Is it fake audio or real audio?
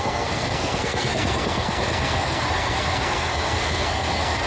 fake